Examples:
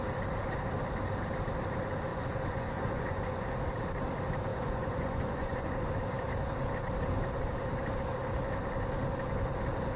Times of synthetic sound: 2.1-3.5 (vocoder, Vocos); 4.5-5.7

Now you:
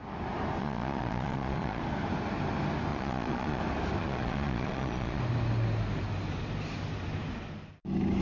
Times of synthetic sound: 0.6-1.8 (vocoder, Vocos); 2.9-3.6; 4.0-5.2

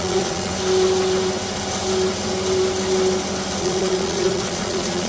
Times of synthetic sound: 0.0-0.5 (vocoder, Vocos); 3.6-5.1

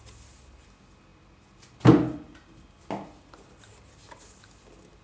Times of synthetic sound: none

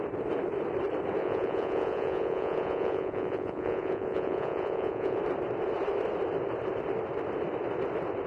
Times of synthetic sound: 1.2-5.2 (vocoder, Vocos)

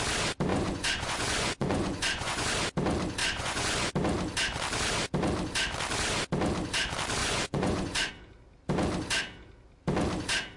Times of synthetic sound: 0.5-2.5 (vocoder, Vocos); 3.2-3.9; 7.2-8.1

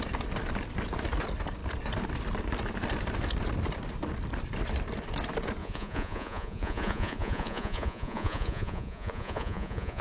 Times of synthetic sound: 5.6-10.0 (vocoder, Vocos)